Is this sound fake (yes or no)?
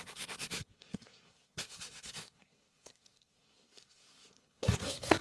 yes